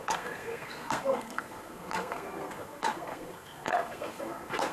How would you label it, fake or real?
fake